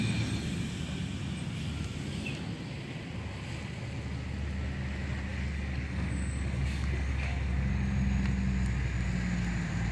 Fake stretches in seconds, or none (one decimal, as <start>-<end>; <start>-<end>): 5.3-7.7